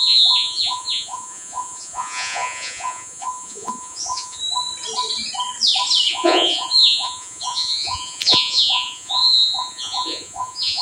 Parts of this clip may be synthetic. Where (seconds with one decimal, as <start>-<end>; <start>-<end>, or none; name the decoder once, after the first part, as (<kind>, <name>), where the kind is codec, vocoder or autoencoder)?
0.0-4.4 (vocoder, Vocos); 6.1-10.8